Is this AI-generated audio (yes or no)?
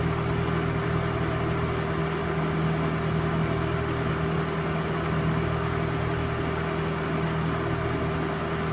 no